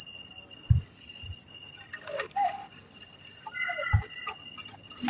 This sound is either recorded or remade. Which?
recorded